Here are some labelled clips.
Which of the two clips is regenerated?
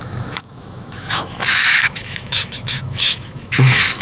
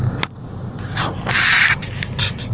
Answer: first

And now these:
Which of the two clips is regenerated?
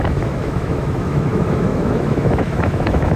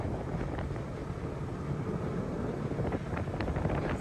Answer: first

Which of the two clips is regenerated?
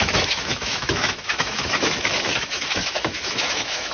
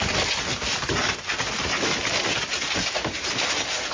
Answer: first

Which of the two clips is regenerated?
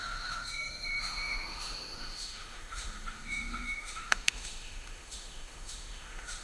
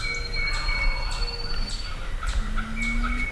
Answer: first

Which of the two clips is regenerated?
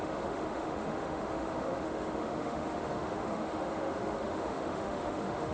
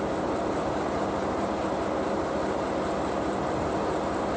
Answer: first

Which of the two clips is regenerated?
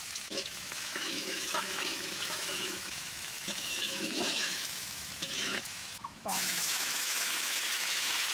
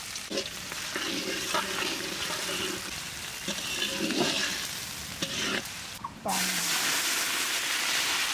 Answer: first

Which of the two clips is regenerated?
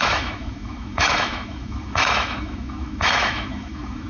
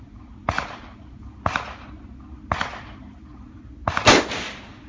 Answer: first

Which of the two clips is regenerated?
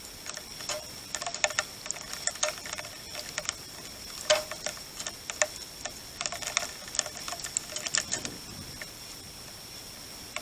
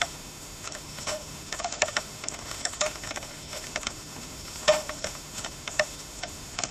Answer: second